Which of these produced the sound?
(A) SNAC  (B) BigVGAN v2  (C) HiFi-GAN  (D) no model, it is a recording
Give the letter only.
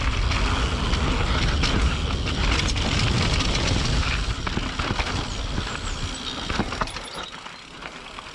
D